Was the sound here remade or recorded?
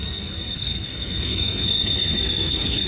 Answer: remade